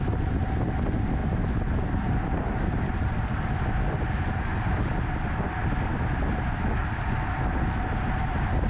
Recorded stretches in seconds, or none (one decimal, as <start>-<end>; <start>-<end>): 0.0-1.2; 3.5-6.8; 7.7-8.7